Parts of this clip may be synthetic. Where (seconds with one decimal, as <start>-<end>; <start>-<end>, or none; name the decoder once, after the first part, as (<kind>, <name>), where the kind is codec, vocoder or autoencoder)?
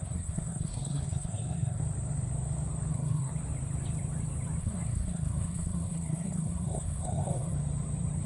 0.0-1.8 (codec, SNAC); 2.9-3.3; 4.6-7.5